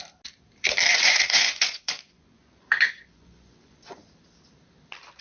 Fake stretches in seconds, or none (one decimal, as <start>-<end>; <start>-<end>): 0.9-4.0